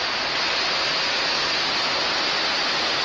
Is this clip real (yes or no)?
yes